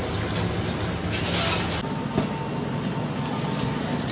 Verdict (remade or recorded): recorded